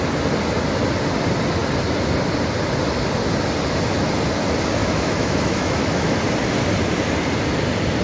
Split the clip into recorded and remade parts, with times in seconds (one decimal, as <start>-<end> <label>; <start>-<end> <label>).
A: 0.0-4.8 recorded; 4.8-6.2 remade; 6.2-8.0 recorded

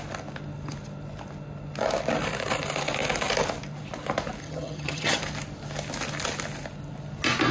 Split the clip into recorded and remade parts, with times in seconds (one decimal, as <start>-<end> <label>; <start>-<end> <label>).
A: 0.0-4.4 recorded; 4.4-5.2 remade; 5.2-7.5 recorded

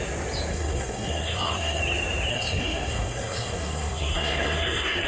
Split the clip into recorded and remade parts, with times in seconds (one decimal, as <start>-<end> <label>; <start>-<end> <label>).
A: 0.0-0.5 recorded; 0.5-1.8 remade; 1.8-2.3 recorded; 2.3-5.1 remade

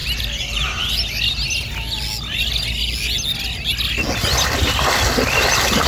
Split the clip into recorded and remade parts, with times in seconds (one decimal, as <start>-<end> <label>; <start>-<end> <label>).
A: 0.0-0.8 remade; 0.8-5.9 recorded

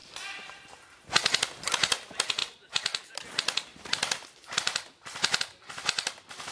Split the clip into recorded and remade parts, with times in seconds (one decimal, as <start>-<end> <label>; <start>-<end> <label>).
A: 0.0-1.5 remade; 1.5-3.7 recorded; 3.7-5.4 remade; 5.4-6.5 recorded